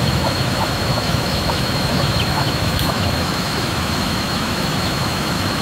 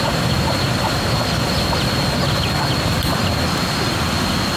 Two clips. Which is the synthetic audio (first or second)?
first